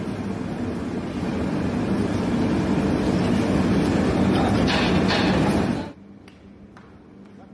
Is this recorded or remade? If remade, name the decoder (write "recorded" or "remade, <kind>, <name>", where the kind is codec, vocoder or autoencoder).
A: recorded